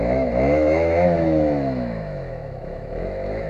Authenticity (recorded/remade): remade